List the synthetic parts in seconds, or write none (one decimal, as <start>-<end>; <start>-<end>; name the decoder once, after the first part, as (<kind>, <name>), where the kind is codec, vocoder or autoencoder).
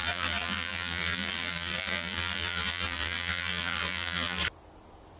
0.0-4.4 (vocoder, BigVGAN v2)